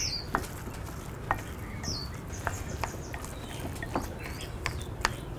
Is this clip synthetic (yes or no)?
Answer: no